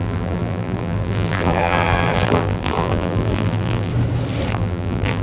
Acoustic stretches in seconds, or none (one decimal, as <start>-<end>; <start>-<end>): 3.9-4.5